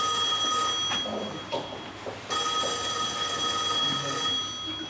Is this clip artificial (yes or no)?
no